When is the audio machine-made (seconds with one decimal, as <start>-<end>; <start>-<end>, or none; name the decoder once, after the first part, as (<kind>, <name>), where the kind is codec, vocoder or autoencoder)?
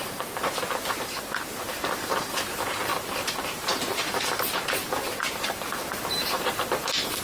0.0-7.2 (vocoder, BigVGAN v2)